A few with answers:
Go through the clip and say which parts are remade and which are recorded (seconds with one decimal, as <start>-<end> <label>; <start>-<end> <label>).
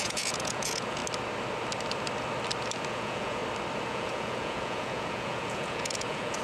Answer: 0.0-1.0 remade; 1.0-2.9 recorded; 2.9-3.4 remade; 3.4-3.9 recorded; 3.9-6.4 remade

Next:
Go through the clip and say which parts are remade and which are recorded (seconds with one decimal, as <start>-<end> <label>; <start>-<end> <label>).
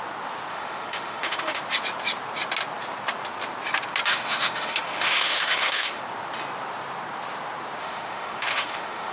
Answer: 0.0-0.5 recorded; 0.5-1.6 remade; 1.6-4.1 recorded; 4.1-6.0 remade; 6.0-7.8 recorded; 7.8-9.1 remade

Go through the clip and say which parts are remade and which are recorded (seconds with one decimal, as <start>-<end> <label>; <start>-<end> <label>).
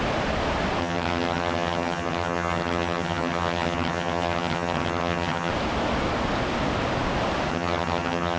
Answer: 0.0-0.8 recorded; 0.8-5.5 remade; 5.5-7.5 recorded; 7.5-8.4 remade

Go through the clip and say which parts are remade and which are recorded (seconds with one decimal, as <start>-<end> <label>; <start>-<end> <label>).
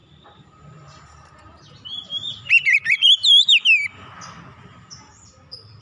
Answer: 0.0-3.5 remade; 3.5-5.8 recorded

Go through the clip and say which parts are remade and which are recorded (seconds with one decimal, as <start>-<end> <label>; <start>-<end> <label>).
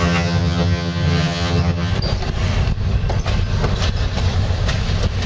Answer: 0.0-1.9 remade; 1.9-5.3 recorded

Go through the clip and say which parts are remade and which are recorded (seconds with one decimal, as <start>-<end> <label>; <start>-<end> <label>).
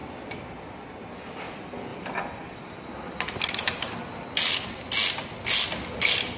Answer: 0.0-6.4 recorded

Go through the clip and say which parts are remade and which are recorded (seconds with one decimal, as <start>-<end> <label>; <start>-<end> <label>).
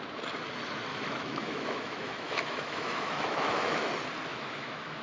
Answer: 0.0-0.9 recorded; 0.9-3.9 remade; 3.9-4.3 recorded; 4.3-5.0 remade